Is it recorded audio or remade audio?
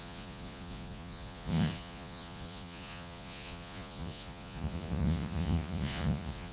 remade